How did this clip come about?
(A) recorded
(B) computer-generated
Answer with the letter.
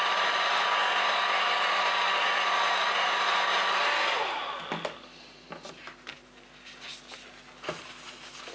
A